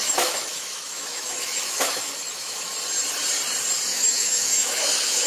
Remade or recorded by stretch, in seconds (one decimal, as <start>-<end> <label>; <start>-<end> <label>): 0.0-2.7 remade; 2.7-3.9 recorded; 3.9-5.3 remade